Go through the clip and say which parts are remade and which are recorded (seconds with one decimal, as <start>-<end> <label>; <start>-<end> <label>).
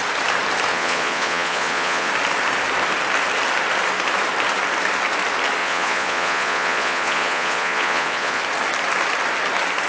0.0-0.7 recorded; 0.7-2.1 remade; 2.1-5.6 recorded; 5.6-8.4 remade; 8.4-9.9 recorded